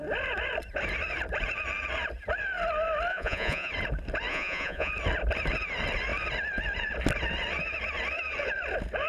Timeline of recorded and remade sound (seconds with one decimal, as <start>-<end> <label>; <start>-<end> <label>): 0.0-3.1 recorded; 3.1-3.7 remade; 3.7-4.3 recorded; 4.3-4.9 remade; 4.9-9.1 recorded